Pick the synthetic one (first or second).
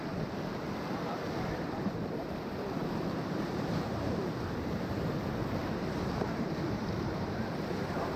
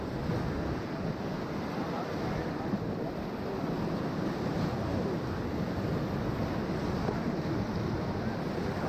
first